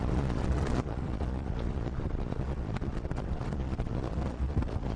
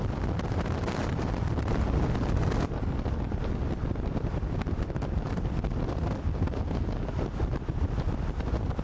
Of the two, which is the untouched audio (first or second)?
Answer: second